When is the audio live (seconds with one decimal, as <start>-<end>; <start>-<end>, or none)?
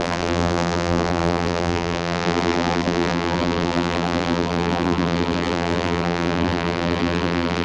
none